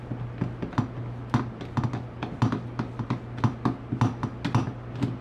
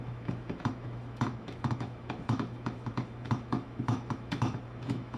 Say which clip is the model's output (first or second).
second